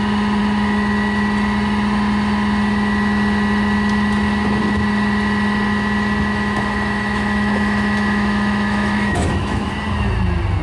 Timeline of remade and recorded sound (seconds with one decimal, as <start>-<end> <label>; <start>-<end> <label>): 0.0-6.3 recorded; 6.3-9.7 remade; 9.7-10.6 recorded